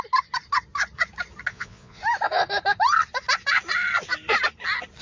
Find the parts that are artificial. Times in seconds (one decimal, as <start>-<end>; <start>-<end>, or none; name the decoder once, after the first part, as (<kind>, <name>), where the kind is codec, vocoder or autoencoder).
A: 1.5-2.0 (vocoder, Vocos)